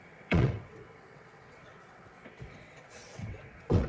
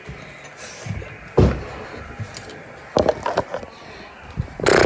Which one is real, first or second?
second